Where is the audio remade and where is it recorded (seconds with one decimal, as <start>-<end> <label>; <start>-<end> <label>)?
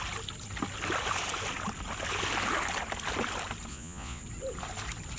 0.0-3.7 recorded; 3.7-4.2 remade; 4.2-5.2 recorded